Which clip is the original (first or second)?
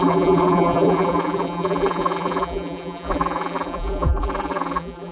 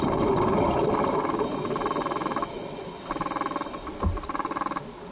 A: second